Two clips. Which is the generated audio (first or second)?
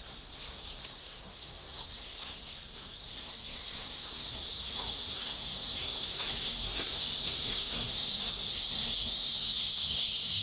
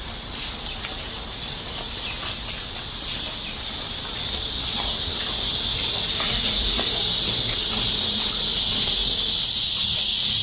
first